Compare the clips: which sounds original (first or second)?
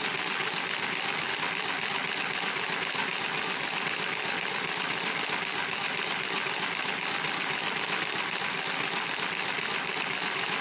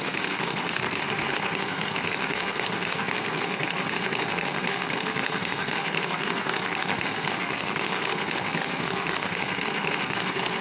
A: first